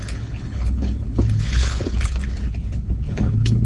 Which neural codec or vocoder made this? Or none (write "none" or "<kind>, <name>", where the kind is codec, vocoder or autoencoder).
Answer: codec, HILCodec